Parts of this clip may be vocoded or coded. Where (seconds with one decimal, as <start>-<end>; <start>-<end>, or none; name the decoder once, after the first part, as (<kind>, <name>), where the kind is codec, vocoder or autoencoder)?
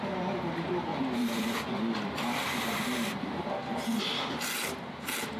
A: 0.9-4.0 (vocoder, BigVGAN v2)